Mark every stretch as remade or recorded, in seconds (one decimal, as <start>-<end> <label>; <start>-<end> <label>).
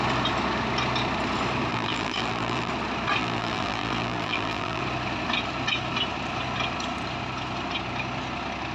0.0-1.7 recorded; 1.7-2.7 remade; 2.7-3.2 recorded; 3.2-4.8 remade; 4.8-8.7 recorded